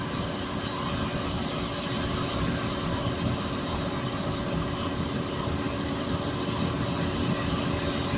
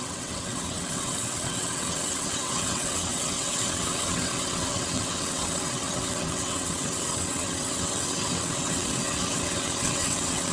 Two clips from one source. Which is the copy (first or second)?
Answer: second